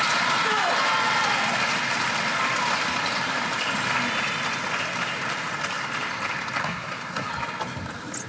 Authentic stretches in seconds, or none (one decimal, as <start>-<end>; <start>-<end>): 0.0-6.6; 7.3-8.3